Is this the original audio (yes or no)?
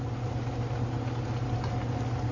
yes